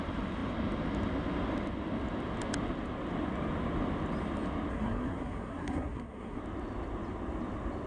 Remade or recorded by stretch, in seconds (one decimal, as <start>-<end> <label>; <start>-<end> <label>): 0.0-4.7 recorded; 4.7-6.4 remade; 6.4-7.9 recorded